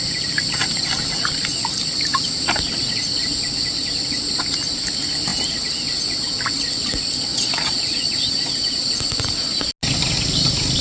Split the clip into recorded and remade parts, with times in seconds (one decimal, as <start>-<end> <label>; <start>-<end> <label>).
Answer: 0.0-7.3 recorded; 7.3-8.3 remade; 8.3-10.8 recorded